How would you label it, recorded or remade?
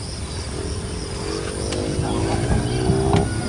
recorded